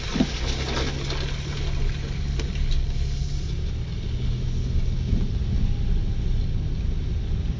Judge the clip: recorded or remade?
recorded